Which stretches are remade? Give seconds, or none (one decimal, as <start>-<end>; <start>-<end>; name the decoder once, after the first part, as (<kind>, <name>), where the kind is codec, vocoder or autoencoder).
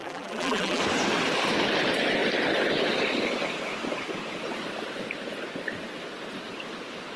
0.0-0.8 (vocoder, BigVGAN v2)